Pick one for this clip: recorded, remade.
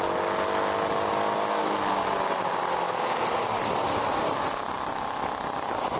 recorded